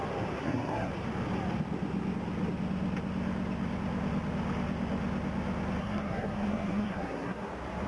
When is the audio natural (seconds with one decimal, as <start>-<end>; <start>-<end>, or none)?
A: 0.0-0.4; 0.9-5.8; 7.5-7.9